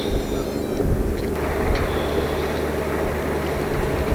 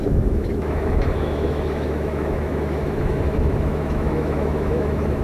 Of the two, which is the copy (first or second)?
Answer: second